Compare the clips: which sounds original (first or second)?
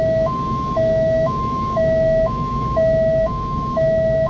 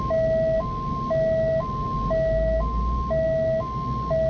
second